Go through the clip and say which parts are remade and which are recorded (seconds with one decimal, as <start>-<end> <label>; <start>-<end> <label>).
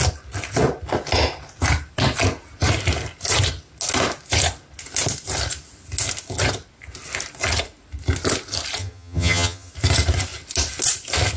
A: 0.0-8.8 recorded; 8.8-9.7 remade; 9.7-11.4 recorded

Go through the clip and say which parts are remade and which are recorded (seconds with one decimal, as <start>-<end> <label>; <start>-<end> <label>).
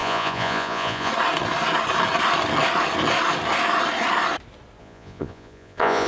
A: 0.0-1.1 remade; 1.1-4.8 recorded; 4.8-6.1 remade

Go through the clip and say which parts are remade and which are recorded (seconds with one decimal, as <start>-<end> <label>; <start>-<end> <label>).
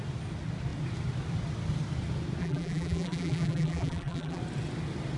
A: 0.0-2.4 recorded; 2.4-4.4 remade; 4.4-5.2 recorded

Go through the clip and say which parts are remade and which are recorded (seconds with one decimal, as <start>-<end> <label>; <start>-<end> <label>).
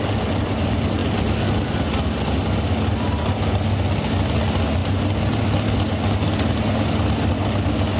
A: 0.0-8.0 recorded